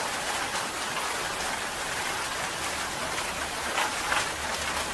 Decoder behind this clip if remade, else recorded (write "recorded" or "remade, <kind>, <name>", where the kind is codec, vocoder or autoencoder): recorded